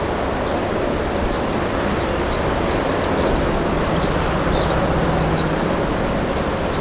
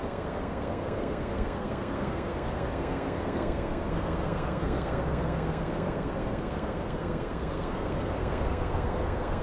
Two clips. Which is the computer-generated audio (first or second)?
second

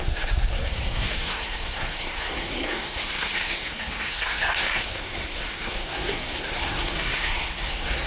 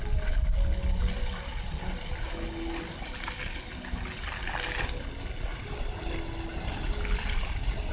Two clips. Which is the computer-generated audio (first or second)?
first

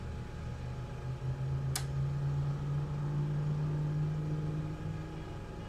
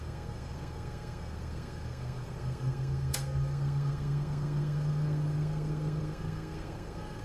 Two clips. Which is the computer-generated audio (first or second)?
second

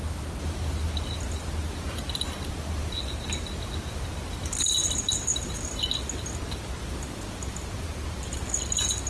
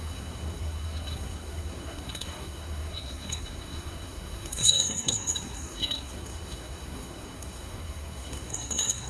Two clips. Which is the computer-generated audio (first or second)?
second